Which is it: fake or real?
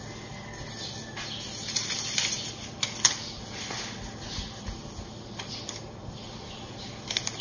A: real